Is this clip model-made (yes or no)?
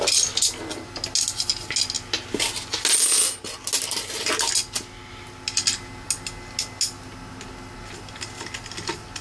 no